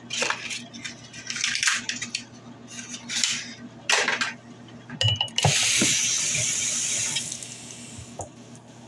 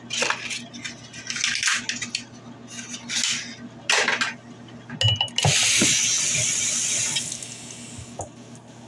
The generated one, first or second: first